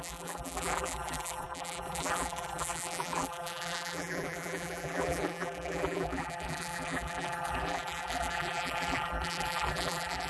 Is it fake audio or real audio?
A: fake